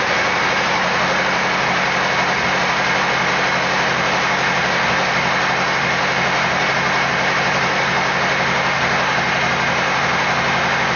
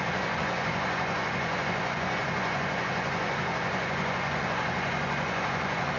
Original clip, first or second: first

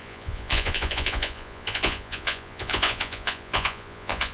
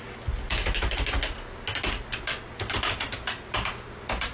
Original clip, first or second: second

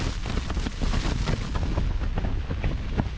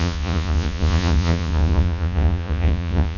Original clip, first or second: first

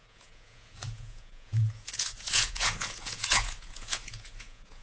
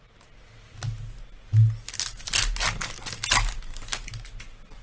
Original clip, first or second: second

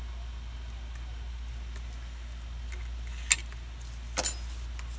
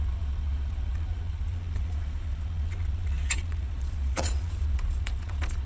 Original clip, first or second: first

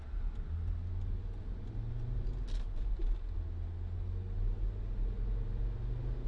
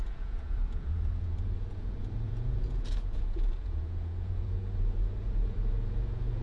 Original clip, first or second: first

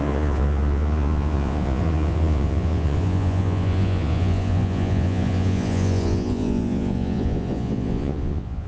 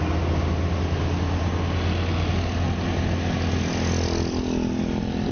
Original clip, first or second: second